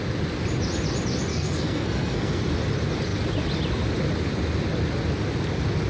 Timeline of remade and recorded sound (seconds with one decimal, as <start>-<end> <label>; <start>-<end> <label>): 0.0-1.3 recorded; 1.3-2.4 remade; 2.4-5.9 recorded